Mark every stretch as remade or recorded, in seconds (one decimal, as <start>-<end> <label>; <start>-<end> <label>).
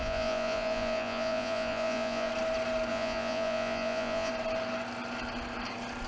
0.0-2.3 remade; 2.3-2.9 recorded; 2.9-4.3 remade; 4.3-6.1 recorded